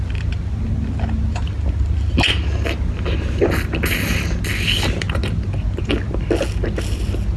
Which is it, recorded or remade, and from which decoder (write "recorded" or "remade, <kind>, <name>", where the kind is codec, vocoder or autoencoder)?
recorded